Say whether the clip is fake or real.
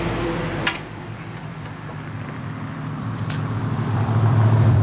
fake